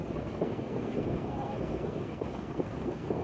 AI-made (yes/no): yes